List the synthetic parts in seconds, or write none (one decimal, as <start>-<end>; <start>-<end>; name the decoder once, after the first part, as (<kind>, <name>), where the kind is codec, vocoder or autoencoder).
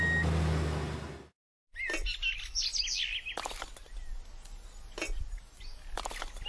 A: none